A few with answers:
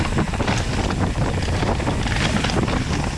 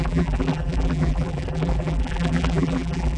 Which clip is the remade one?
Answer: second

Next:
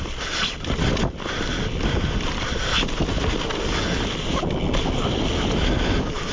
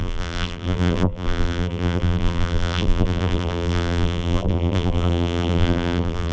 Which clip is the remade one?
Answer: second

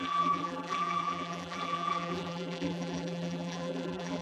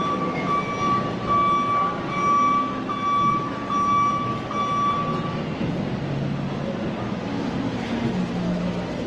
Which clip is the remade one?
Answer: first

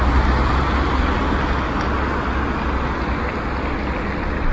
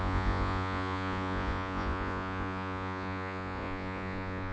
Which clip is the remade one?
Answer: second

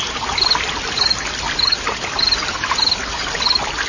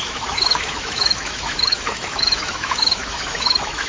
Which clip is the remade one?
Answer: second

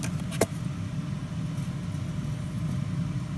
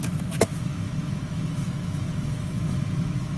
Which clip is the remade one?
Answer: second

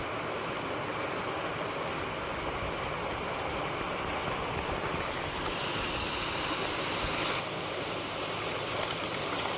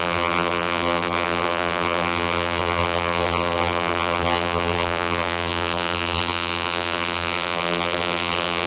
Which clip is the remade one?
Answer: second